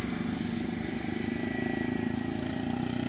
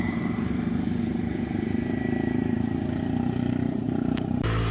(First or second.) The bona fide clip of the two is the first